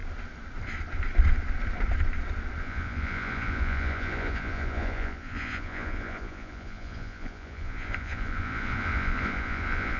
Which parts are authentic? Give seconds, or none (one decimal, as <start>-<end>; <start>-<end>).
0.0-2.6